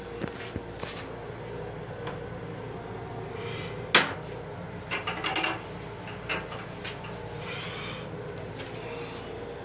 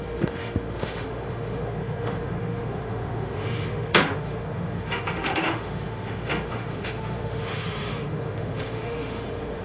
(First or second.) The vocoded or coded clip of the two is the second